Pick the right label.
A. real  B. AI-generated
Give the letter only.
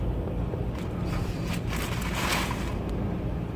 A